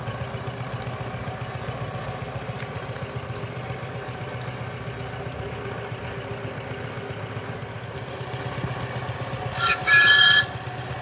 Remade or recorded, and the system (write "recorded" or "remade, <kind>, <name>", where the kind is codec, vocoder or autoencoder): recorded